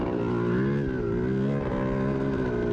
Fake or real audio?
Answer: real